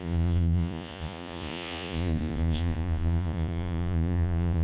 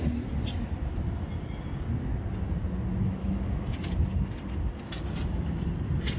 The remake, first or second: first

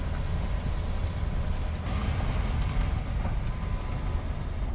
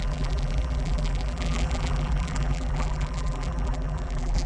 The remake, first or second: second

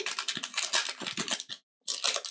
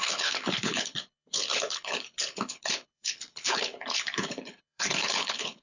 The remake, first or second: second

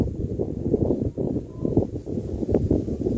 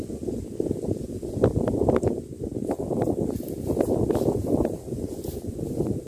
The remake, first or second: first